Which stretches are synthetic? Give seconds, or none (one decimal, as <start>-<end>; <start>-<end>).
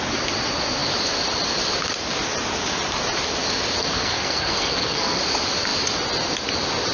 3.8-5.2